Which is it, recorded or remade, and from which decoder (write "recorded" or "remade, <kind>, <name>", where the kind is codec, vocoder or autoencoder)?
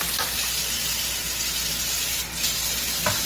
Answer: recorded